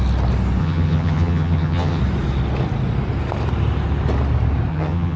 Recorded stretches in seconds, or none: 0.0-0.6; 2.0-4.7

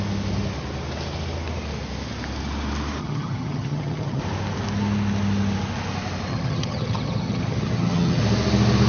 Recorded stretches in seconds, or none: 0.0-3.0; 4.2-6.3; 8.2-8.9

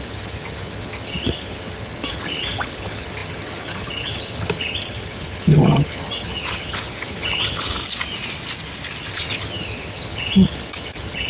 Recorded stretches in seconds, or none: 7.8-9.1

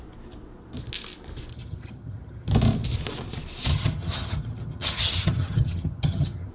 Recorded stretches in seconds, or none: 0.0-1.5; 2.5-3.7